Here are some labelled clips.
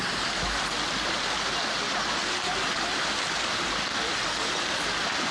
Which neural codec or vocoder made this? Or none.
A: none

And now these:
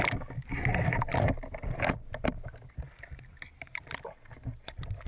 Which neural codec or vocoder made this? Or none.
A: none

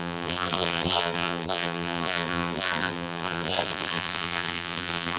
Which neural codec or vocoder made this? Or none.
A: vocoder, BigVGAN v2